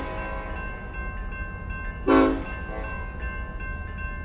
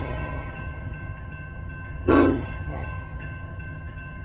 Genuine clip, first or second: first